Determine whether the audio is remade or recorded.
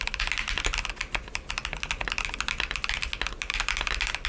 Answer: recorded